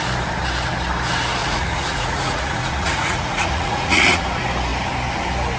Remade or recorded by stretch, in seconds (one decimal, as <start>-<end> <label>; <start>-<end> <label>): 0.0-1.4 recorded; 1.4-4.2 remade; 4.2-5.6 recorded